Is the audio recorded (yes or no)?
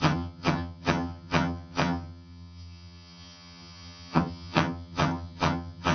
no